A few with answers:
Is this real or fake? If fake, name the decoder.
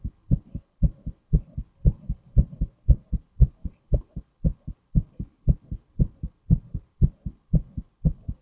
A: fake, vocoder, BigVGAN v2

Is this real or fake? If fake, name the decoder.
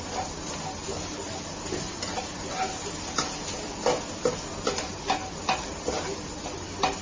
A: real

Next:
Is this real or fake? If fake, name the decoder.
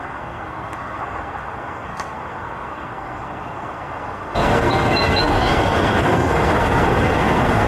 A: fake, codec, SNAC